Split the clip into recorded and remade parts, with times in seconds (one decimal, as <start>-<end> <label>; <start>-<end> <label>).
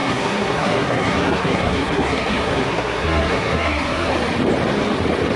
0.0-4.1 remade; 4.1-5.4 recorded